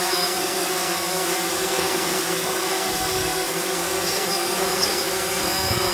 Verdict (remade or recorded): remade